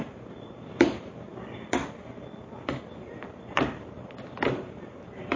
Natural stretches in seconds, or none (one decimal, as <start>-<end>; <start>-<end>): 1.3-3.0